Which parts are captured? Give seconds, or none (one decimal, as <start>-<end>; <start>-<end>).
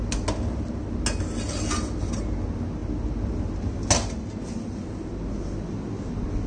0.0-6.5